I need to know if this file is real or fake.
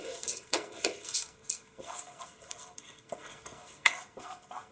fake